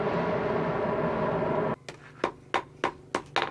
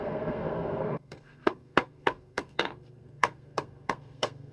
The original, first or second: first